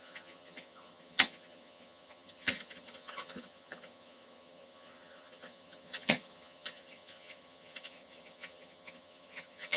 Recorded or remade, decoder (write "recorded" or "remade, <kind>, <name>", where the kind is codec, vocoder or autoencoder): remade, vocoder, HiFi-GAN